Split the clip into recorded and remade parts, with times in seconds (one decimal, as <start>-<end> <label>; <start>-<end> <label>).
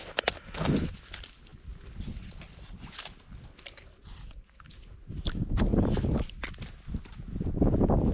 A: 0.0-8.1 recorded